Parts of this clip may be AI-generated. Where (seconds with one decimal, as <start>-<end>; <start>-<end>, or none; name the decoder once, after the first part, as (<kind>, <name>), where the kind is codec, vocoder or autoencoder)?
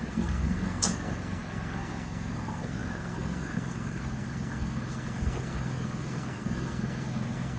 0.0-7.6 (codec, SNAC)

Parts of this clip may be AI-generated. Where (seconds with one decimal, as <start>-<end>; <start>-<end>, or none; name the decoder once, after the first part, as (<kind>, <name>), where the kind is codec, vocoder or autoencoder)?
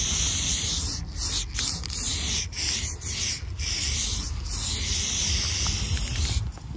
none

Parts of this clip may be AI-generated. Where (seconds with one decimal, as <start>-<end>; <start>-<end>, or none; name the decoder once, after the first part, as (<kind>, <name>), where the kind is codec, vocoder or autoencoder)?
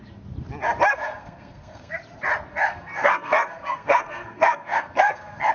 0.9-2.0 (codec, SNAC); 2.5-5.5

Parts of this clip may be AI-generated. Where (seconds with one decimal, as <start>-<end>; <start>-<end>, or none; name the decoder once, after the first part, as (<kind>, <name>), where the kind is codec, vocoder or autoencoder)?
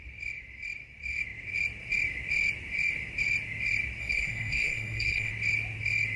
4.0-5.3 (codec, SNAC)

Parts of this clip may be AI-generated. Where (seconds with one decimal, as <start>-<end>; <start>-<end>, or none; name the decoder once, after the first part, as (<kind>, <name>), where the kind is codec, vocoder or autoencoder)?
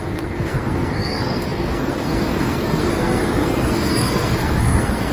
0.0-5.1 (codec, SNAC)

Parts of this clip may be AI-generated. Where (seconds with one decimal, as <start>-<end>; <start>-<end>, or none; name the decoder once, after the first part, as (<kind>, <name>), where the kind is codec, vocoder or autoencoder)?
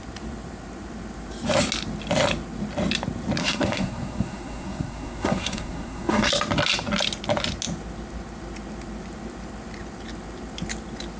3.4-6.3 (codec, SNAC)